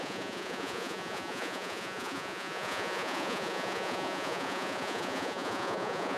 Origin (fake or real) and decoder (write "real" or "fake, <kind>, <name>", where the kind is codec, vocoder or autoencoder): fake, vocoder, Vocos